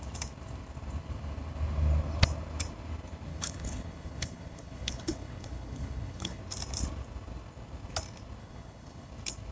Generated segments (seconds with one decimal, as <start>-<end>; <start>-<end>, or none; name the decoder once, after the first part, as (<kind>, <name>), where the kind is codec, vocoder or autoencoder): 3.3-6.4 (codec, HILCodec); 8.4-9.1